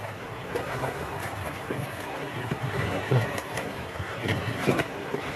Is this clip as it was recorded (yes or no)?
no